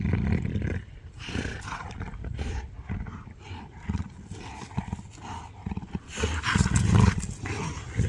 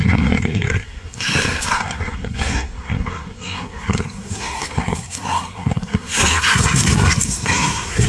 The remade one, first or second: second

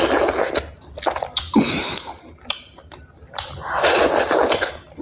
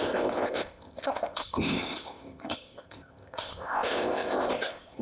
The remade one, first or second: second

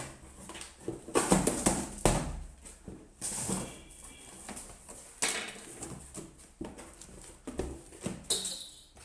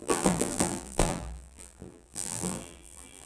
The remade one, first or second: second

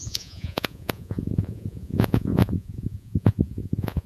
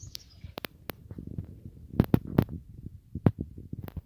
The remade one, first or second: first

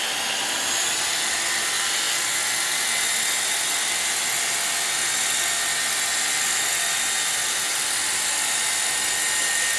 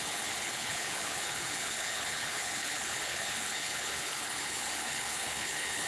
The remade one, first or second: second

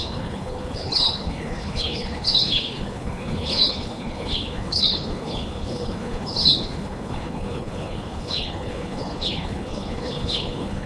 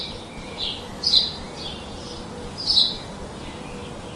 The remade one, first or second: first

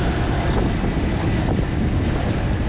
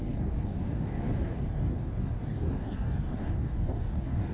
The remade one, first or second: second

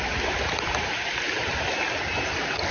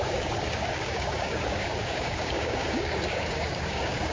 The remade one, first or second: second